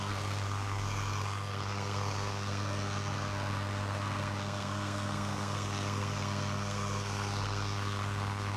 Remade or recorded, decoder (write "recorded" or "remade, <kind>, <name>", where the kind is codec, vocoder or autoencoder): remade, codec, SNAC